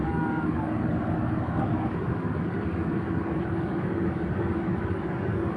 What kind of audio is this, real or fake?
fake